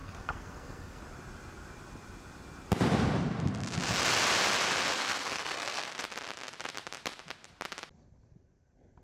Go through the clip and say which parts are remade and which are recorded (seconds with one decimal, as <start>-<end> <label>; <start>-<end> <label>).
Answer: 0.0-1.0 remade; 1.0-4.9 recorded; 4.9-5.9 remade; 5.9-9.0 recorded

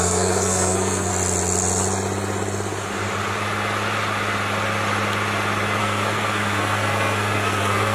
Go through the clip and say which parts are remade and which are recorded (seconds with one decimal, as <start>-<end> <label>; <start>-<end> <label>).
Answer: 0.0-1.1 remade; 1.1-5.8 recorded; 5.8-7.9 remade